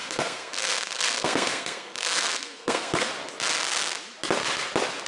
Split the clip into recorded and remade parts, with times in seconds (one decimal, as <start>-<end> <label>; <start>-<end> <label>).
0.0-3.1 remade; 3.1-5.1 recorded